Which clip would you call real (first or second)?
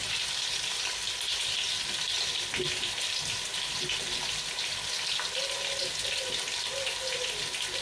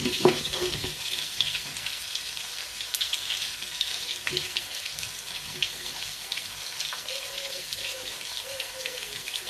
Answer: first